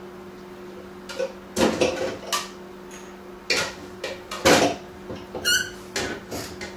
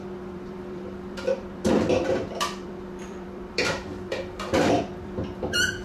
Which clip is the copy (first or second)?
second